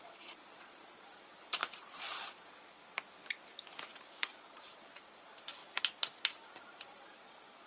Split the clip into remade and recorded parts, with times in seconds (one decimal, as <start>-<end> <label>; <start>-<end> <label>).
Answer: 0.0-2.8 remade; 2.8-4.2 recorded; 4.2-5.6 remade; 5.6-6.6 recorded; 6.6-7.7 remade